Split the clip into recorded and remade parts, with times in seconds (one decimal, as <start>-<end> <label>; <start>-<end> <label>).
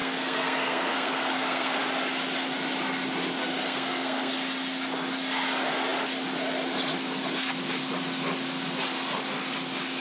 0.0-1.8 remade; 1.8-3.4 recorded; 3.4-4.3 remade; 4.3-10.0 recorded